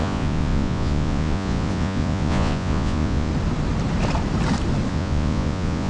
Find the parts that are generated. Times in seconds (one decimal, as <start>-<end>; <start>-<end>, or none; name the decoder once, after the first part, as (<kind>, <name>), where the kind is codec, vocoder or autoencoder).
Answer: 0.0-3.3 (vocoder, Vocos); 4.9-5.9